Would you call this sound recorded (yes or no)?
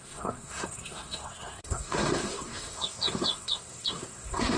no